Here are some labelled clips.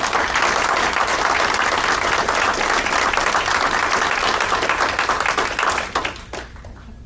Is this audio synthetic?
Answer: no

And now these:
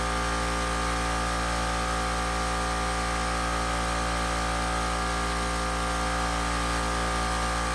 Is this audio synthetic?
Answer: no